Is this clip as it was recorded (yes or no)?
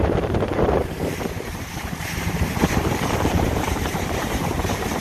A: no